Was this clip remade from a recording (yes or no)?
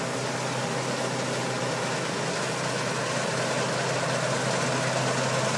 no